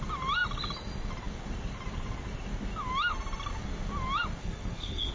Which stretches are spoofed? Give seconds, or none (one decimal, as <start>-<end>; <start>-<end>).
4.4-5.1